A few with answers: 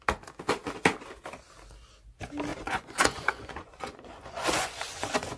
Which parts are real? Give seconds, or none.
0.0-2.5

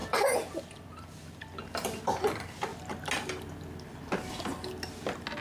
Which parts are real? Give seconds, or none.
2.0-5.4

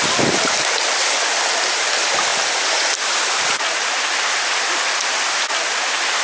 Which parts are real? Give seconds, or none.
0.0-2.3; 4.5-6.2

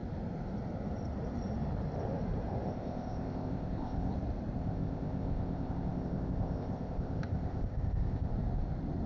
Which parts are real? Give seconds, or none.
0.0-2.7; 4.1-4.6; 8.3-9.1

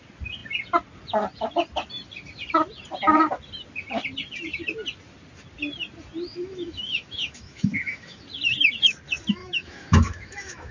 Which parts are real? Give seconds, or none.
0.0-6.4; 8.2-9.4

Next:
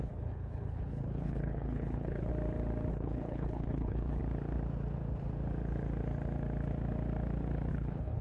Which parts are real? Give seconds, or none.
2.3-2.9; 4.2-7.7

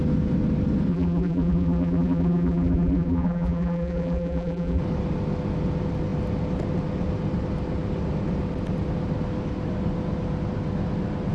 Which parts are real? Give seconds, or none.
0.0-0.9; 4.8-11.3

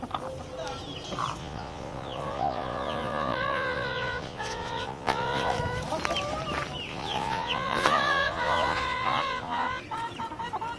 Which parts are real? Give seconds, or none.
0.0-1.4; 5.6-6.9; 9.8-10.8